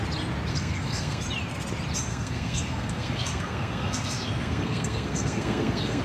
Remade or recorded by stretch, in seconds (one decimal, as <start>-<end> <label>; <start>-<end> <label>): 0.0-0.5 recorded; 0.5-1.2 remade; 1.2-2.1 recorded; 2.1-6.0 remade